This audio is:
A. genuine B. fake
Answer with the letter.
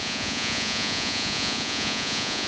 B